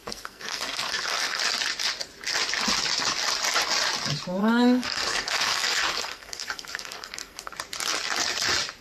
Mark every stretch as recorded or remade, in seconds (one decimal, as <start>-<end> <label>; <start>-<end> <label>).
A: 0.0-1.4 remade; 1.4-4.4 recorded; 4.4-7.5 remade; 7.5-8.8 recorded

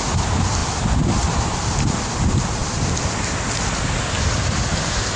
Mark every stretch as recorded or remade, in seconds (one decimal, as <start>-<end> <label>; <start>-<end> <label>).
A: 0.0-0.6 recorded; 0.6-1.6 remade; 1.6-5.2 recorded